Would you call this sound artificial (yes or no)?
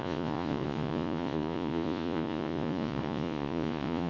yes